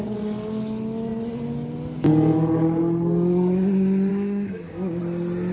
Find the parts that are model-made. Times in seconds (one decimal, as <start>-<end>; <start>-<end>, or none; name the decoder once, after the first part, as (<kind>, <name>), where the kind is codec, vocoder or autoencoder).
4.1-5.0 (codec, DAC)

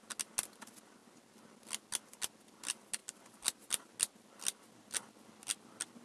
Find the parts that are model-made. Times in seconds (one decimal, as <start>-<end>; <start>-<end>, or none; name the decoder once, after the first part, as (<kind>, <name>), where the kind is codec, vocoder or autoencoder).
none

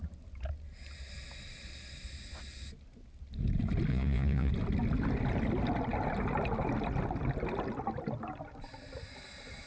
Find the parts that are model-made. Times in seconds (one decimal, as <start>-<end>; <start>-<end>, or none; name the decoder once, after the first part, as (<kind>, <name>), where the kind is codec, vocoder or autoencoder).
3.9-4.5 (vocoder, Vocos)